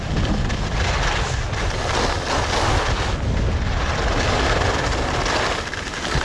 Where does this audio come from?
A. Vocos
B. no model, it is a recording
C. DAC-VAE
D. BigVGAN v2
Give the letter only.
B